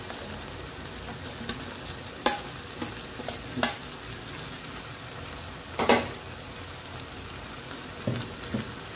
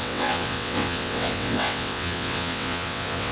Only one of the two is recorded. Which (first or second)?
first